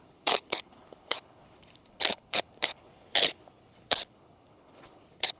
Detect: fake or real fake